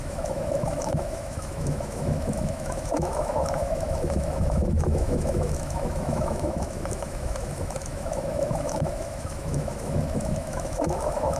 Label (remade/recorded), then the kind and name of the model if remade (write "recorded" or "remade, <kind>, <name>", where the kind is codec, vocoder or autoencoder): remade, autoencoder, DAC-VAE